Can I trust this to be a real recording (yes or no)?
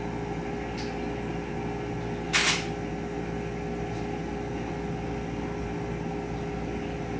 yes